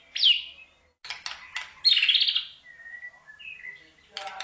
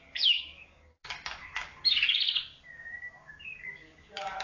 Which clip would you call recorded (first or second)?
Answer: first